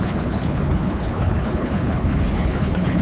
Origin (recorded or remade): remade